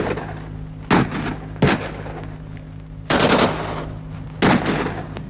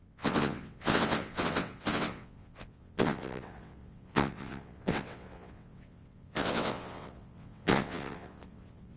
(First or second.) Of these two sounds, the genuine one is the first